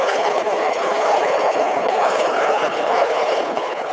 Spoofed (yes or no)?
yes